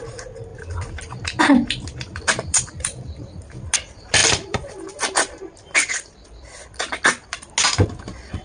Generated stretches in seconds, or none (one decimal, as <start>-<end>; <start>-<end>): 0.5-3.4; 4.2-7.5